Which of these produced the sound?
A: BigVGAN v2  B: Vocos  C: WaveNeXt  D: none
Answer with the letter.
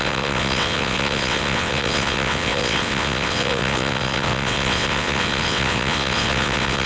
C